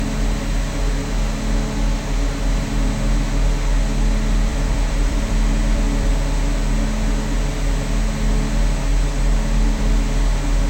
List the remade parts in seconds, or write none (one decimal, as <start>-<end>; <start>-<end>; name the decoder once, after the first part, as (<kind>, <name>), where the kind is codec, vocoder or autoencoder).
4.5-6.1 (vocoder, BigVGAN v2); 9.1-9.8

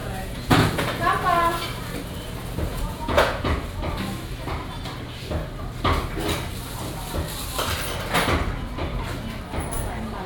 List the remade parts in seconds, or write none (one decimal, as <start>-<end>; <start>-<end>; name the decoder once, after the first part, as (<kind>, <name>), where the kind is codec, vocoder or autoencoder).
0.0-0.8 (vocoder, Vocos); 2.7-3.6